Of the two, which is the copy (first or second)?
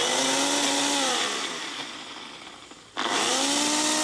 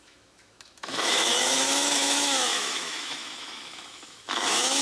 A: second